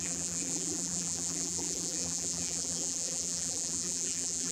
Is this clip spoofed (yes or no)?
yes